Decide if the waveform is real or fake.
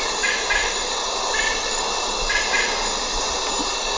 real